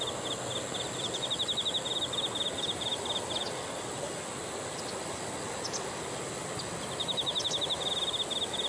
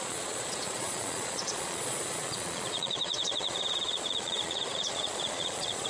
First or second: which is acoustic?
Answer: first